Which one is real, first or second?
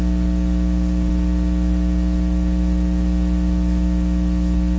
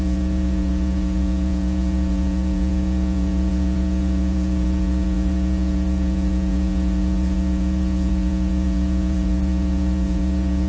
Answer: first